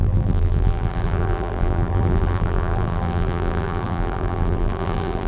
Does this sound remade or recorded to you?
remade